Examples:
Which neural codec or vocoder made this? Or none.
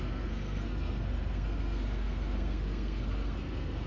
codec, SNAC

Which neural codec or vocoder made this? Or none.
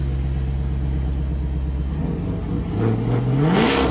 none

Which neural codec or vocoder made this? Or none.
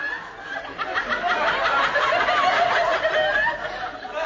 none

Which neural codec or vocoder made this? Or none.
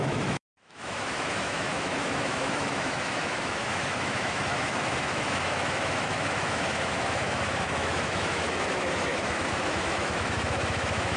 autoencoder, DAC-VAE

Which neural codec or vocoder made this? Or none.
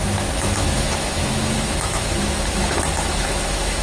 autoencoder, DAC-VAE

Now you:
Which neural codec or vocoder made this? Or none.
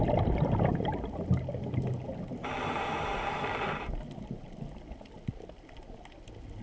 none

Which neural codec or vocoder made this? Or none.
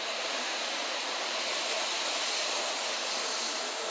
vocoder, Vocos